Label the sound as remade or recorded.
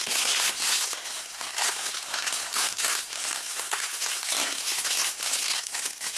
remade